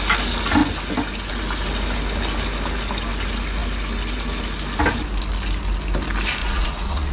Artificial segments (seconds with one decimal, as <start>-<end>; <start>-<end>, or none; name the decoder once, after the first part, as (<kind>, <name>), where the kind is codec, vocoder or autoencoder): 6.4-7.1 (vocoder, Vocos)